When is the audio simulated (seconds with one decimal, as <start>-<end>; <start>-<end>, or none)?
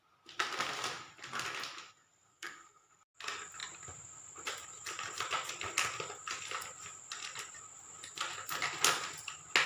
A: 2.3-2.9